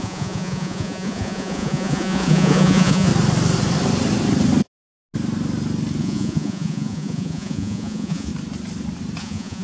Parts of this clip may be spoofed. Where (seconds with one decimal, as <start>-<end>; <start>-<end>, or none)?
0.0-3.1; 6.0-8.3; 9.2-9.6